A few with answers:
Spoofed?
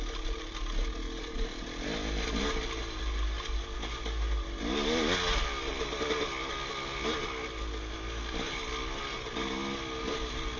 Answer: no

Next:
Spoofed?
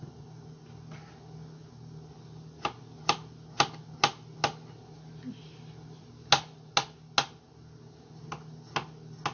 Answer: no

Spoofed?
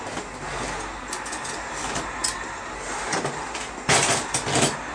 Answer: no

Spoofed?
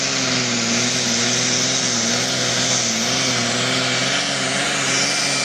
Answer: no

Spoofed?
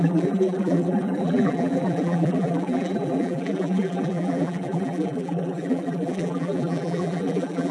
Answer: yes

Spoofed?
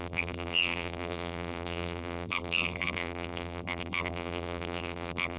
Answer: yes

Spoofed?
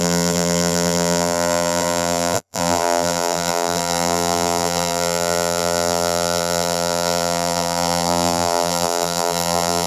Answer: yes